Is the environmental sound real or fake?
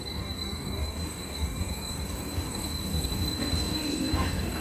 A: fake